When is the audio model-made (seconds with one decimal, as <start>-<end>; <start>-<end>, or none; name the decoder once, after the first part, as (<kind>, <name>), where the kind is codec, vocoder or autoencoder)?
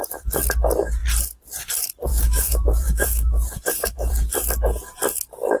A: 2.1-4.1 (autoencoder, DAC-VAE)